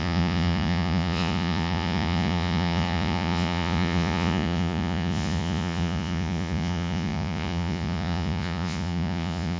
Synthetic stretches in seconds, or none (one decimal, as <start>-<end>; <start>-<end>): 0.0-9.6